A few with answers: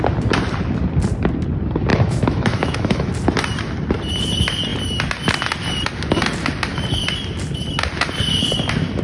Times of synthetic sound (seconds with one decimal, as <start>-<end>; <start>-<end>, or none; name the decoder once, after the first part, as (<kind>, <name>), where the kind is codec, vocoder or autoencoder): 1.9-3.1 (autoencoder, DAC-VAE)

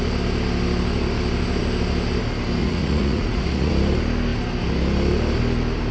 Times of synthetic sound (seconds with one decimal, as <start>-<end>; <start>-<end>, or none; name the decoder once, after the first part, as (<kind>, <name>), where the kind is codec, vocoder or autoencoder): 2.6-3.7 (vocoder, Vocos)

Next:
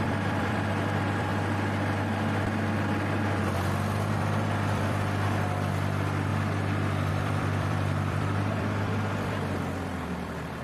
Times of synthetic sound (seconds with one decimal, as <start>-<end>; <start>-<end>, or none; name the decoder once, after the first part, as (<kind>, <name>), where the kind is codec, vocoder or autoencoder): 0.0-1.3 (vocoder, BigVGAN v2); 4.2-6.3; 7.1-10.6

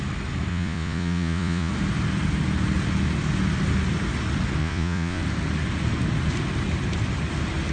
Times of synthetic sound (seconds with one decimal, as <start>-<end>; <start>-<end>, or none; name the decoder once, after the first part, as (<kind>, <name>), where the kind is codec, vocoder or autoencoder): 0.5-1.7 (vocoder, Vocos); 4.6-5.2

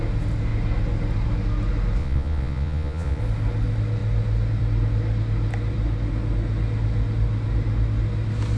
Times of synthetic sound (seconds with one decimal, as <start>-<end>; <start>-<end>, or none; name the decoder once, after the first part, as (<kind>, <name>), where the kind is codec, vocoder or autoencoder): 2.0-3.2 (vocoder, Vocos)

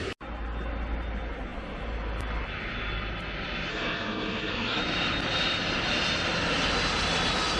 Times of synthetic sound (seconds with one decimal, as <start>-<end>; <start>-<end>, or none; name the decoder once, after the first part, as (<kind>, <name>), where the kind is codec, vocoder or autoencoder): 3.7-4.8 (codec, SNAC)

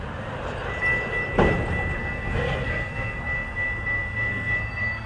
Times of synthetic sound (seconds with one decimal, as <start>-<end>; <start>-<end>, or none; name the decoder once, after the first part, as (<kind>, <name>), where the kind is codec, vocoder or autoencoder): 2.0-5.1 (codec, SNAC)